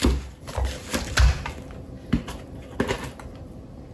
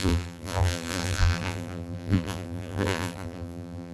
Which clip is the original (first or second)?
first